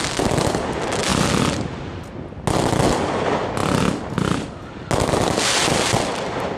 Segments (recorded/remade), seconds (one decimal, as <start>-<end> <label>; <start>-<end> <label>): 0.0-6.6 recorded